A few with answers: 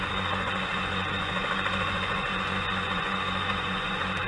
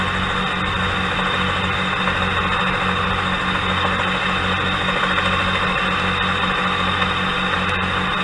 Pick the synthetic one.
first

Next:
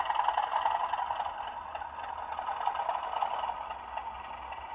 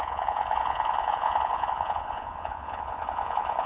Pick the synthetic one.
second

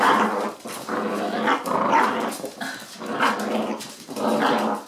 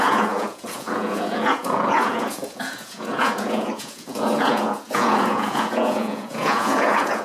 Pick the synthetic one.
second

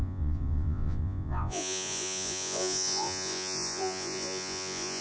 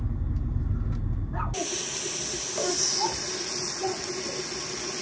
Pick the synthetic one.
first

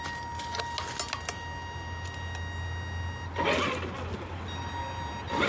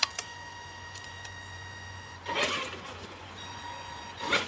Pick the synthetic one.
second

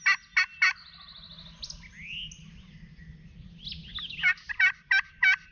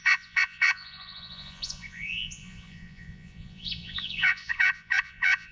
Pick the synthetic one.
second